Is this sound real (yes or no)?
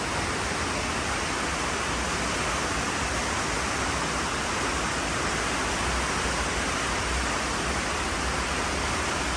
yes